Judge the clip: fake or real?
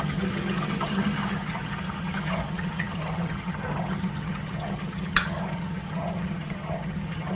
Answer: fake